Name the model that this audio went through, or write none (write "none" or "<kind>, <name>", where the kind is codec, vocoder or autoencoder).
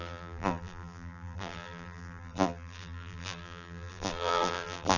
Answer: vocoder, BigVGAN v2